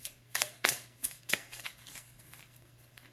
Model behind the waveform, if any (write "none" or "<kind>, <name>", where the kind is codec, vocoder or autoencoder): codec, SNAC